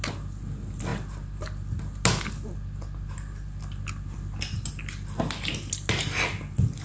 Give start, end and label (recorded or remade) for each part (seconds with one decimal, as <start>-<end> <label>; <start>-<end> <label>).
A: 0.0-6.8 recorded